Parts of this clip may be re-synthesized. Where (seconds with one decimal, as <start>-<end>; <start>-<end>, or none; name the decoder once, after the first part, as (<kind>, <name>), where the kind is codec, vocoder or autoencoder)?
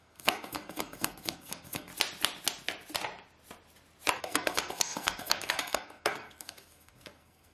0.0-1.9 (codec, SNAC); 4.2-7.5